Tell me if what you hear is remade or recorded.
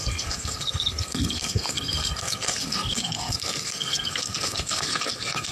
remade